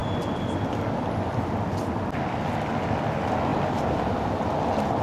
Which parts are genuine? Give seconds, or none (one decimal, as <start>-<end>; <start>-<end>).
0.0-5.0